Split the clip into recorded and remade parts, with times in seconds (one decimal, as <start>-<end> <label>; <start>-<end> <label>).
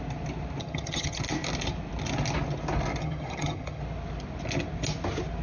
0.0-0.6 recorded; 0.6-1.2 remade; 1.2-3.0 recorded; 3.0-3.8 remade; 3.8-5.4 recorded